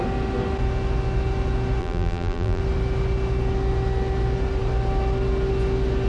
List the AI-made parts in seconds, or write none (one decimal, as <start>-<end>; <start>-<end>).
1.8-2.6